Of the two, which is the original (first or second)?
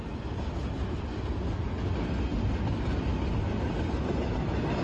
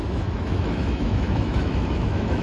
first